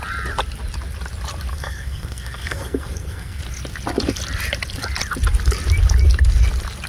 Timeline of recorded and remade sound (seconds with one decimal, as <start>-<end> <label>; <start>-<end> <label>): 0.0-1.5 recorded; 1.5-3.4 remade; 3.4-6.9 recorded